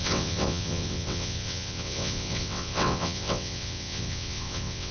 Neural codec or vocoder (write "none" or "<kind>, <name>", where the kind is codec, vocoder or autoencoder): vocoder, WaveNeXt